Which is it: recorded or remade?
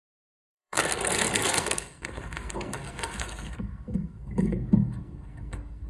remade